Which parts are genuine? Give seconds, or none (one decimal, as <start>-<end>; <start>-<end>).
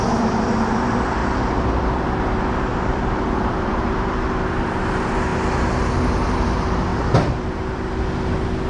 0.0-1.2; 2.0-2.7; 4.8-6.9; 8.0-8.7